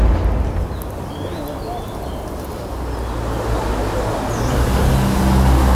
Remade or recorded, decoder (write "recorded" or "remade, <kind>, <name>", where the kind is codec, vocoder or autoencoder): recorded